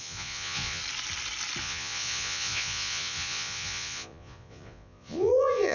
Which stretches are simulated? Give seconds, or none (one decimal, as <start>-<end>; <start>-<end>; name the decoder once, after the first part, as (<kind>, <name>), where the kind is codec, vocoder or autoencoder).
0.0-0.8 (vocoder, Vocos); 1.6-5.7